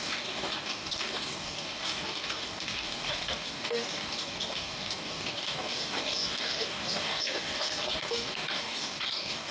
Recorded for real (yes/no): no